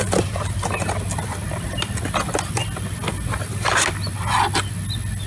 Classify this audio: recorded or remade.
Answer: recorded